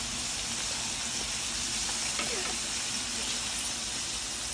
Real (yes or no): yes